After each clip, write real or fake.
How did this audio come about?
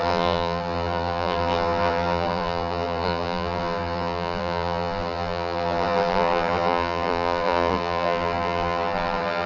fake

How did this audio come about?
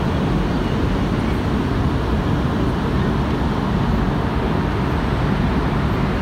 real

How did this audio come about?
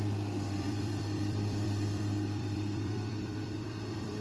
fake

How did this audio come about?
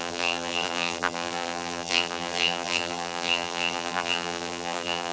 fake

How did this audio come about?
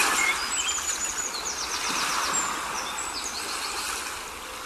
real